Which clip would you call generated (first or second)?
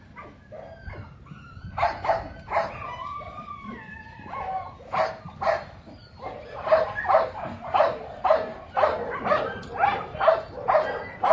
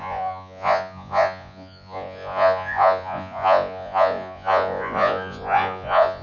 second